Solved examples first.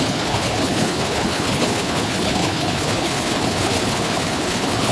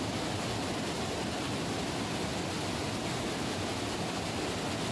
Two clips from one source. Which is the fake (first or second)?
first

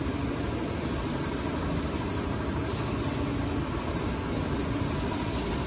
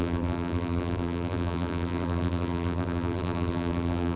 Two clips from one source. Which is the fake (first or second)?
second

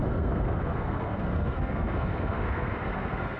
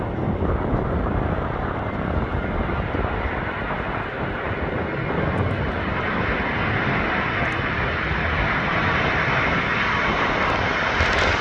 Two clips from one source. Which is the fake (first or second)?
first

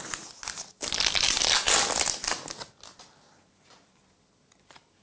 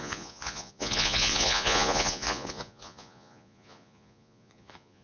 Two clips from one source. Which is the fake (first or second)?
second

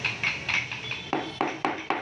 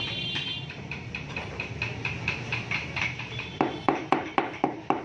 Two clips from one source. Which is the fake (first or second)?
second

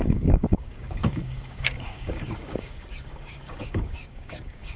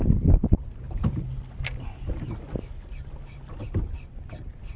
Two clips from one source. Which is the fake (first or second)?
first